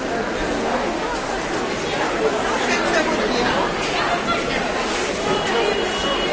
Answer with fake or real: real